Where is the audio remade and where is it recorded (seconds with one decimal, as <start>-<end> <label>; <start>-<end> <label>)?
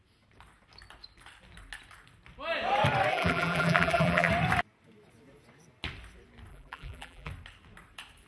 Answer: 0.0-3.1 recorded; 3.1-4.3 remade; 4.3-6.5 recorded; 6.5-7.3 remade; 7.3-8.3 recorded